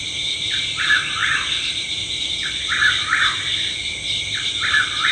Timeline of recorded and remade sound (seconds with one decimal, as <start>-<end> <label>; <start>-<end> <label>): 0.0-5.1 recorded